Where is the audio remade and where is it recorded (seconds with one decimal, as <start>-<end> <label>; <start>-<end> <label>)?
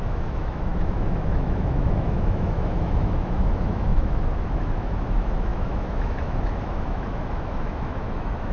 0.0-8.5 remade